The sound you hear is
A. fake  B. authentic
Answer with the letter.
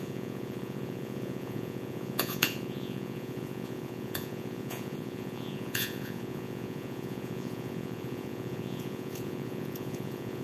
A